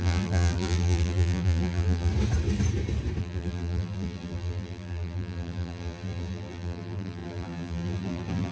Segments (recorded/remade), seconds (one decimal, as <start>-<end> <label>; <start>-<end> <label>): 0.0-2.1 remade; 2.1-3.2 recorded; 3.2-8.5 remade